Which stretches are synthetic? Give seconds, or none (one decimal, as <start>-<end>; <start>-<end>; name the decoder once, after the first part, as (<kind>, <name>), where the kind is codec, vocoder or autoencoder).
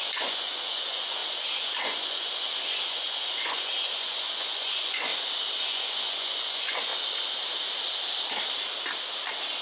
0.0-5.1 (vocoder, Vocos); 5.6-6.9